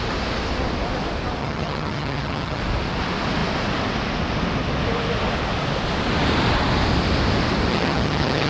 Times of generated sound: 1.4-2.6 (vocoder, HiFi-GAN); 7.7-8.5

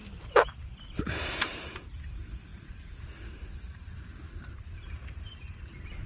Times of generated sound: none